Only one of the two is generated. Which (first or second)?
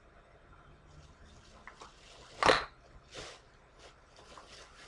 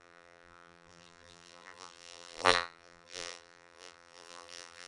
second